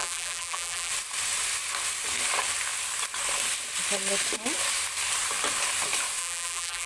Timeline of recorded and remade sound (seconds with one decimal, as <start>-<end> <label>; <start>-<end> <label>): 0.0-0.9 remade; 0.9-6.2 recorded; 6.2-6.9 remade